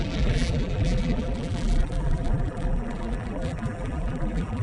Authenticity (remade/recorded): remade